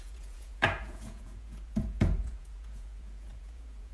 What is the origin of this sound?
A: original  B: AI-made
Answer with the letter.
B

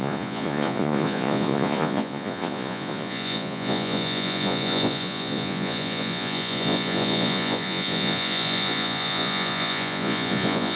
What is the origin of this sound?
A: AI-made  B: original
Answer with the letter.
A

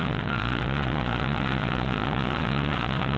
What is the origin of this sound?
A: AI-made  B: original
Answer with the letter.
A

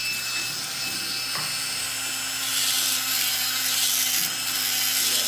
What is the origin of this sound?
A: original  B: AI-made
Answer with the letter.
A